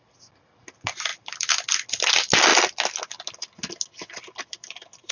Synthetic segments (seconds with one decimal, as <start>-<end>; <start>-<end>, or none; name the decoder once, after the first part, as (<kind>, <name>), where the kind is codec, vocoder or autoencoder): none